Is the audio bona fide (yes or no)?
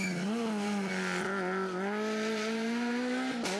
yes